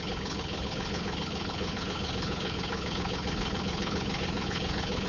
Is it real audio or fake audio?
fake